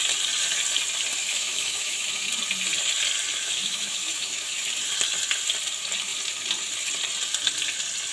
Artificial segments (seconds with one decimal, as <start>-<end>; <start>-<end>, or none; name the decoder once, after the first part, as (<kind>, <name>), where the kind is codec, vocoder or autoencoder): 1.2-2.3 (autoencoder, DAC-VAE); 3.4-4.6